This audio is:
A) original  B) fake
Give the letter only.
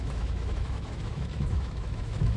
B